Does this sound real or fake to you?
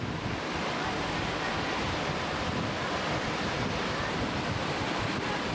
real